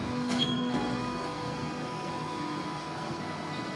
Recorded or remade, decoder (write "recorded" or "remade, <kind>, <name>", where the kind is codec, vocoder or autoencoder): remade, codec, SNAC